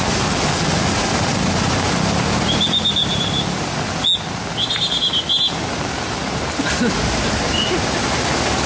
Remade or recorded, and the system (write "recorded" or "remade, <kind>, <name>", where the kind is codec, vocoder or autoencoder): recorded